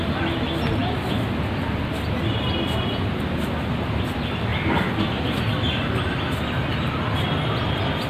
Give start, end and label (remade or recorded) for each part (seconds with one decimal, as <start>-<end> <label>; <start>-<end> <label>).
0.0-8.1 recorded